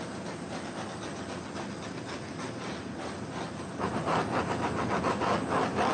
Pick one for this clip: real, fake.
real